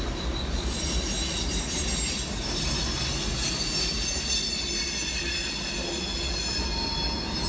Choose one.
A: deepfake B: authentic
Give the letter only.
B